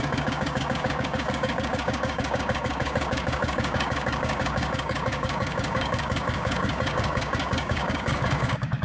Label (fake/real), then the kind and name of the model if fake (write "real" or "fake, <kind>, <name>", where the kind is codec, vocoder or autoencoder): fake, codec, DAC